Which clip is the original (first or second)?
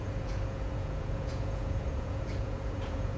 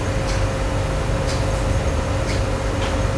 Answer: second